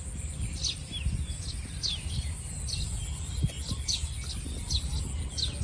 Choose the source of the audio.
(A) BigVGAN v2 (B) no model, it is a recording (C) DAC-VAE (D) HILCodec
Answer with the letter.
B